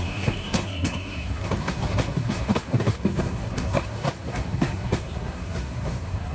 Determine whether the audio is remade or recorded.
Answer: remade